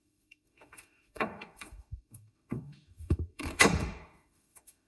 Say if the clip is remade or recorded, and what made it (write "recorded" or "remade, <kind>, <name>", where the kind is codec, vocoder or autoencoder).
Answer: remade, autoencoder, DAC-VAE